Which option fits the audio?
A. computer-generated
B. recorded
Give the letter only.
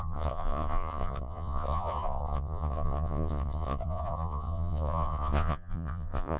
A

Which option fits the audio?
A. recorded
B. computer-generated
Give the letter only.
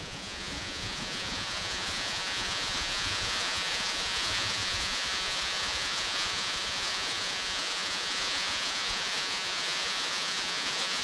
B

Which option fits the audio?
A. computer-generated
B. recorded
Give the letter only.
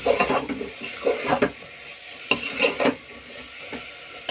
B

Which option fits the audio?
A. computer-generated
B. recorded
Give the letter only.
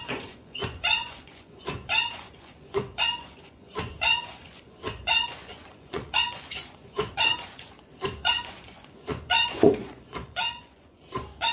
A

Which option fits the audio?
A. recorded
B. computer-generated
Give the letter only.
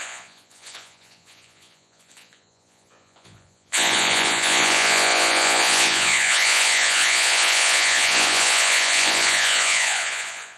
B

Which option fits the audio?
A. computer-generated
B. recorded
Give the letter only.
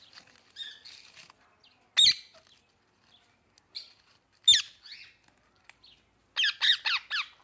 B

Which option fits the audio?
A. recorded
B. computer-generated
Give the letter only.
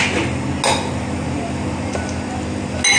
A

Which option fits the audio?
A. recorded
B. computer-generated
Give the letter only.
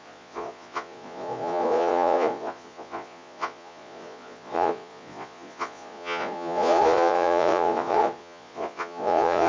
B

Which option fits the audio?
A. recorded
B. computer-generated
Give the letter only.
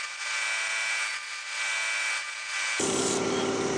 A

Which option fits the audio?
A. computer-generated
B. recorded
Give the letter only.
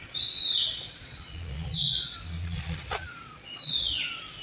A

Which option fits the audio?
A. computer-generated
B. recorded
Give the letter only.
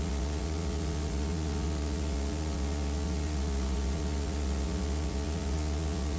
A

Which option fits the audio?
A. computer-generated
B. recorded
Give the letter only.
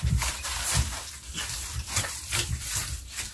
B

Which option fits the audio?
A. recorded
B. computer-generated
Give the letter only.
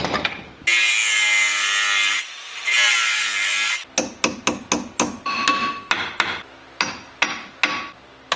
A